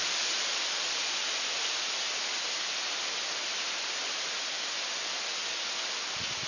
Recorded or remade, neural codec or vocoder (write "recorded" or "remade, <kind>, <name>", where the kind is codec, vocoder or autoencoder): recorded